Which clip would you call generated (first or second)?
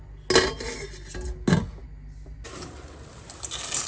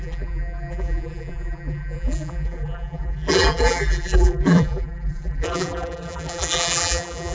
second